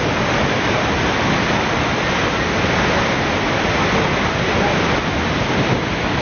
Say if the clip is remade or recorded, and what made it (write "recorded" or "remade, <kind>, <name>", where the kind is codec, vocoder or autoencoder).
recorded